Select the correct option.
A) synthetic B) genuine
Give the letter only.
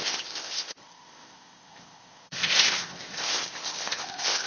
A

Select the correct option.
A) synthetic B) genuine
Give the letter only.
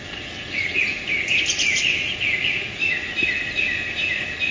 B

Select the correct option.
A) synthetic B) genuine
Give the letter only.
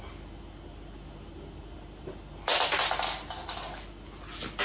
B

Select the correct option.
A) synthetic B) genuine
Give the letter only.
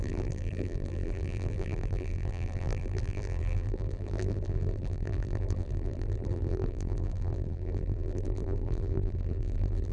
A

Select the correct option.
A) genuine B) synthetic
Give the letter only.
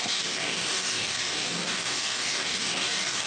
B